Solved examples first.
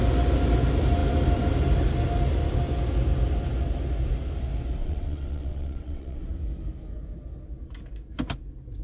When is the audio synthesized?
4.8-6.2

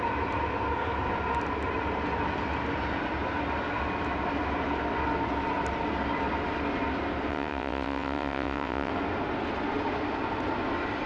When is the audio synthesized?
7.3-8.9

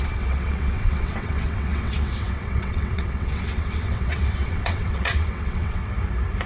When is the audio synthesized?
0.0-5.8

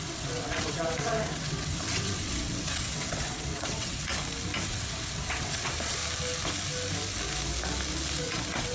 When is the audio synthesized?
0.0-4.1; 4.7-6.0; 8.2-8.7